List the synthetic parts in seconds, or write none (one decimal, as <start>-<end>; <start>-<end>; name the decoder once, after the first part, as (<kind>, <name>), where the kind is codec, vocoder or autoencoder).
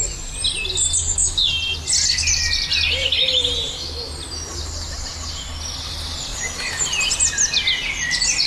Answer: none